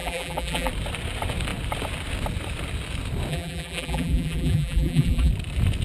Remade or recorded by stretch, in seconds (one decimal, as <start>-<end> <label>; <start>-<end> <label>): 0.0-0.7 remade; 0.7-3.3 recorded; 3.3-5.3 remade; 5.3-5.8 recorded